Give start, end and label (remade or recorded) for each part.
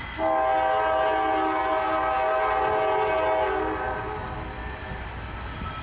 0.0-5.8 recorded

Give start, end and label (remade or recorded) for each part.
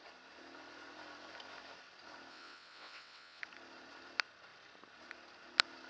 0.0-2.3 recorded; 2.3-3.4 remade; 3.4-5.9 recorded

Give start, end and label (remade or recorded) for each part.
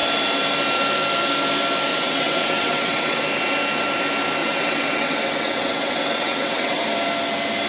0.0-1.9 recorded; 1.9-3.2 remade; 3.2-4.4 recorded; 4.4-6.8 remade; 6.8-7.7 recorded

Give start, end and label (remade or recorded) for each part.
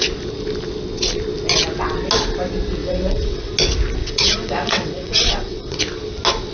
0.0-2.8 recorded; 2.8-3.5 remade; 3.5-4.0 recorded; 4.0-5.8 remade; 5.8-6.5 recorded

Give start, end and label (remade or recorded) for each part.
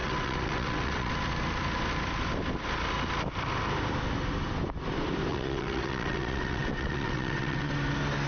0.0-1.1 remade; 1.1-5.3 recorded; 5.3-7.7 remade; 7.7-8.3 recorded